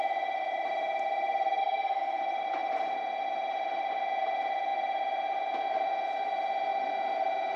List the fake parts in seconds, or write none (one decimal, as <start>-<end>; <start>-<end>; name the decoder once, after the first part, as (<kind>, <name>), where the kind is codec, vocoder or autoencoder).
1.6-2.2 (codec, SNAC)